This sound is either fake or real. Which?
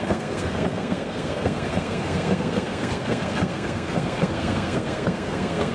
fake